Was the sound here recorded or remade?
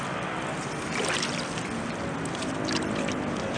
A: recorded